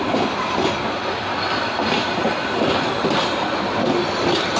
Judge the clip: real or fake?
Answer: real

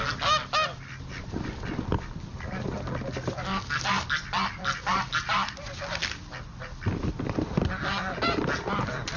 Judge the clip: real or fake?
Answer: real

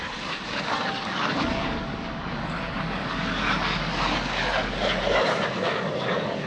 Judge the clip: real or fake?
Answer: fake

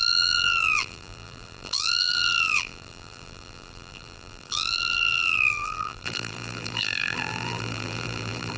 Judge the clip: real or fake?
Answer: fake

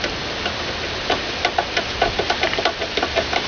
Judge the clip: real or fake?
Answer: real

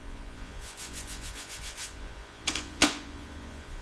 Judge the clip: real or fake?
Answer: fake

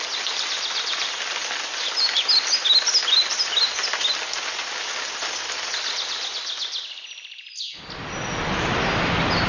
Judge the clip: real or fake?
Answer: real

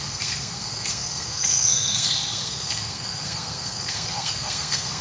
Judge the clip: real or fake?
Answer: fake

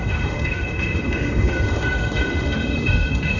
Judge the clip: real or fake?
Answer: fake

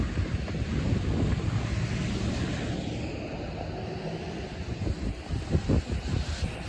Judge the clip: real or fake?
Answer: real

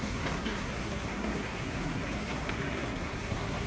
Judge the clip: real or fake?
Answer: fake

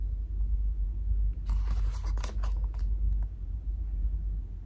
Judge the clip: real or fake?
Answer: real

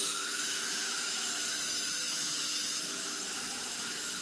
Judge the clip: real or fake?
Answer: fake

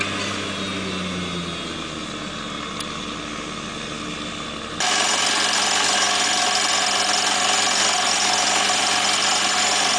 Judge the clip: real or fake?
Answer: real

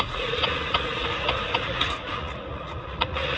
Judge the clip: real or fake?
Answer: fake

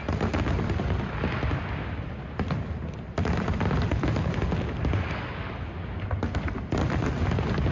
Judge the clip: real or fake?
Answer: real